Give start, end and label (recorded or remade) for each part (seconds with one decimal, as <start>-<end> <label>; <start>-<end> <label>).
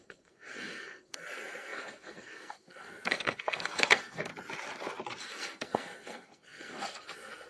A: 0.0-4.3 remade; 4.3-5.2 recorded; 5.2-7.5 remade